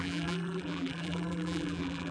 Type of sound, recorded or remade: remade